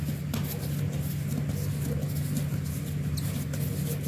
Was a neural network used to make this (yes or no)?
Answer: no